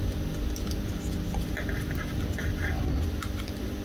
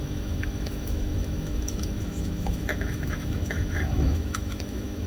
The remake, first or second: second